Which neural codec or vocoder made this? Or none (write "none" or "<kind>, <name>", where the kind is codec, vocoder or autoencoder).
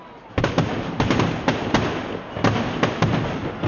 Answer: none